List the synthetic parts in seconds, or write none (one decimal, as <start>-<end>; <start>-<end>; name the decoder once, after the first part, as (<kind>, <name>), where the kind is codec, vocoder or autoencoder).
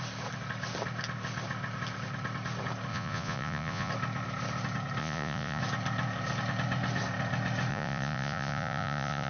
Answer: 2.9-3.9 (vocoder, Vocos); 5.0-5.6; 7.7-9.3